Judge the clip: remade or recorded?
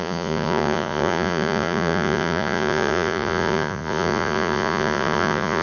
remade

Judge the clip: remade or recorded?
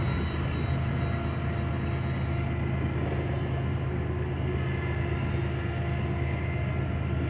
recorded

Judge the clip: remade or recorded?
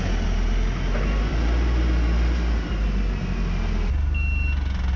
recorded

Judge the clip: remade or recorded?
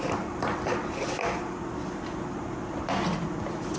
recorded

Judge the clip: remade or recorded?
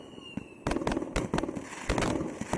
recorded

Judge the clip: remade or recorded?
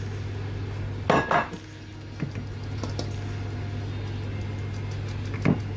recorded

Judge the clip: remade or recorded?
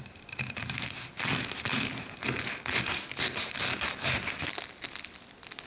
recorded